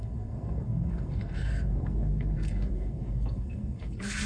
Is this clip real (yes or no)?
no